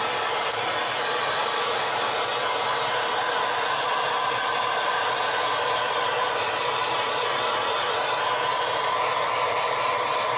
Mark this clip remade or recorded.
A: recorded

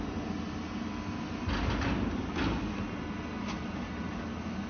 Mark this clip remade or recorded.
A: recorded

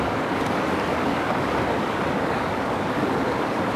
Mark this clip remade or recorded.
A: remade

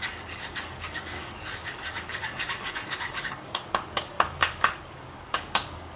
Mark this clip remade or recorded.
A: remade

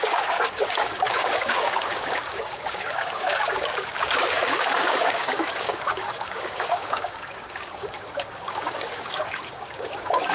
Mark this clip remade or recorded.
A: remade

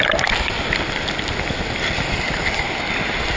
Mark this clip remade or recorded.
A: recorded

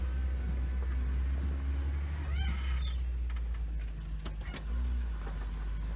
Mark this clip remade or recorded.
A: recorded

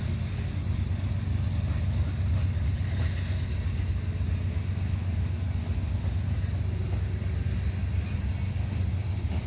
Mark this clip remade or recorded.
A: recorded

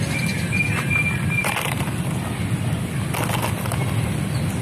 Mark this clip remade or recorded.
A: recorded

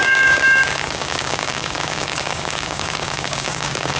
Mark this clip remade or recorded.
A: remade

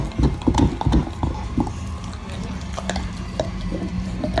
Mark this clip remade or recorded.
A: recorded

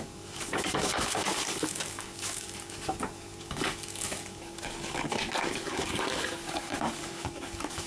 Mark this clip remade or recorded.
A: remade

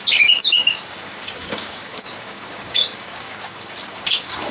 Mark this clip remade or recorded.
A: remade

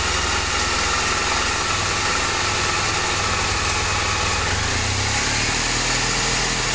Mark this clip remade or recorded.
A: recorded